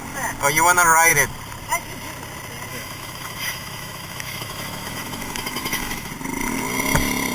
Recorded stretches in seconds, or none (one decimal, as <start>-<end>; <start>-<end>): 0.0-2.7; 6.1-7.3